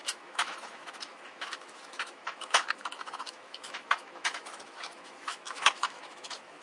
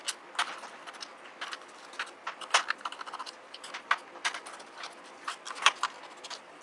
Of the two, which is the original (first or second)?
second